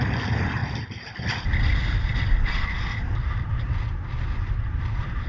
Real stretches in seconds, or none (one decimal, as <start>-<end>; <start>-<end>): 0.0-5.3